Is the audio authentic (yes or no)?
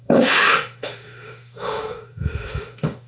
no